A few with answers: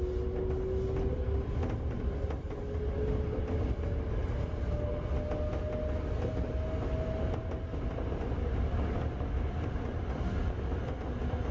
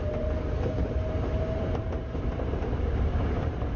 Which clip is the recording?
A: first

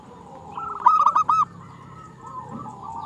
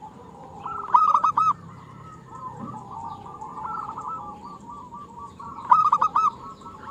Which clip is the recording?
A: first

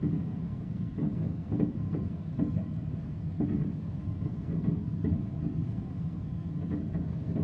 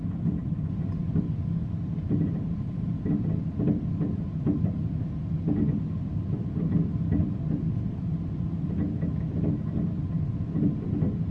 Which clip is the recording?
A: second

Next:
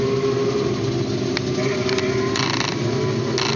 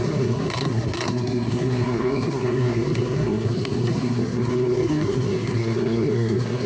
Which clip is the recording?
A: first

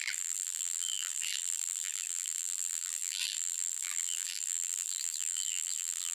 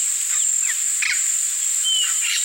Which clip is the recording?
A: second